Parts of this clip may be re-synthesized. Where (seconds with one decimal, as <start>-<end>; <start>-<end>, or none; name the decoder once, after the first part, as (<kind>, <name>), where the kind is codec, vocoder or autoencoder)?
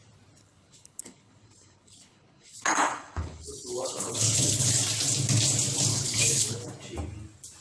0.4-4.7 (codec, HILCodec); 5.9-6.7